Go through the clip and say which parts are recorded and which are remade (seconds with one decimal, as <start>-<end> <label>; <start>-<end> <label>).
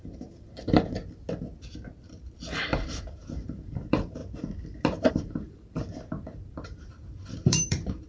0.0-1.0 remade; 1.0-2.2 recorded; 2.2-4.2 remade; 4.2-5.1 recorded; 5.1-5.9 remade; 5.9-6.5 recorded; 6.5-8.1 remade